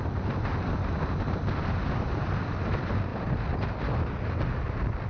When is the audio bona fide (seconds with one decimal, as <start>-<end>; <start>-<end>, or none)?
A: 0.0-5.1